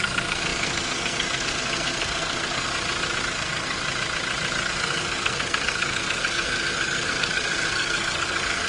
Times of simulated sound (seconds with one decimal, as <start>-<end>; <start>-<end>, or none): 0.0-2.7; 3.3-3.8; 4.6-8.7